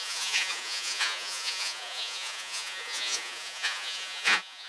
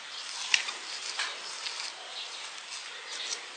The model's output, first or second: first